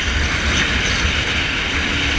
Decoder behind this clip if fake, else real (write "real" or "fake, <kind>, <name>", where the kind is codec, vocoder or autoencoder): real